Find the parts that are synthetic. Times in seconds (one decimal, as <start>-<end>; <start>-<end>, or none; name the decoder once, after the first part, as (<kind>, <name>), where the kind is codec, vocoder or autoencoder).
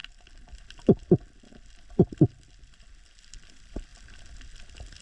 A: 3.0-3.9 (vocoder, BigVGAN v2)